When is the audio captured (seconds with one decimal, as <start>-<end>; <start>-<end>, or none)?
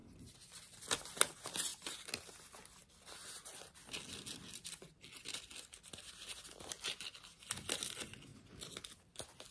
0.0-9.5